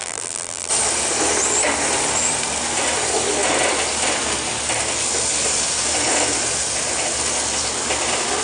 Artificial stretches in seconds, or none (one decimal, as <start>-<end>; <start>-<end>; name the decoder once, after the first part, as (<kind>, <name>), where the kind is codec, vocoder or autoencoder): 0.0-0.7 (vocoder, BigVGAN v2)